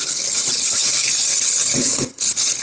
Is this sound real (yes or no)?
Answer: no